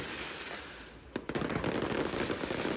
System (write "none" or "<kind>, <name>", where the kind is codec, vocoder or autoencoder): none